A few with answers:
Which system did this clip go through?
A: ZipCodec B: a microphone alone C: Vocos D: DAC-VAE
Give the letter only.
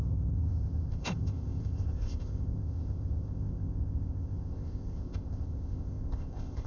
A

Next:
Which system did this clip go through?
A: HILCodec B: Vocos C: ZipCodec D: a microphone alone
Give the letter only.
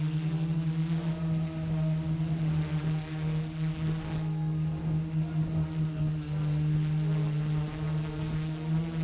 D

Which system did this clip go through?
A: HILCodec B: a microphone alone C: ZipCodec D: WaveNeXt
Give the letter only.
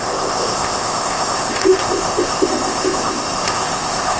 C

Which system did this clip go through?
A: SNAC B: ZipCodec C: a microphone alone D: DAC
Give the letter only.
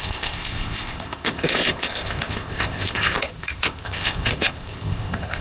B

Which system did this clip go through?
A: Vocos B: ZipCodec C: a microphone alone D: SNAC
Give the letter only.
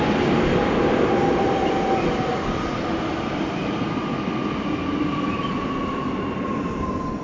C